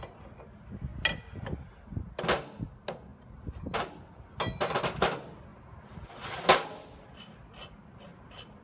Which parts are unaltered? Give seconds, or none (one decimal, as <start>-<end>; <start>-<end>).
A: 0.0-8.6